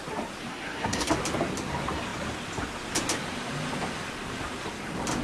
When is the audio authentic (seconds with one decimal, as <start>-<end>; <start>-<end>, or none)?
0.0-0.5; 1.1-5.2